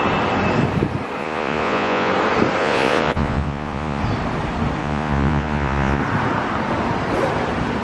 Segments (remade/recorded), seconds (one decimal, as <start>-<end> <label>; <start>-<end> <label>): 0.0-1.2 recorded; 1.2-2.1 remade; 2.1-2.6 recorded; 2.6-4.0 remade; 4.0-4.8 recorded; 4.8-6.0 remade; 6.0-7.8 recorded